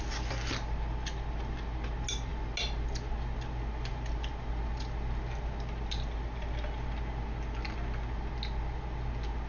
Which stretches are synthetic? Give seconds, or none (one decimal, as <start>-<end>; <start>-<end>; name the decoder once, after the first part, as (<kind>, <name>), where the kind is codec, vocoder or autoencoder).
none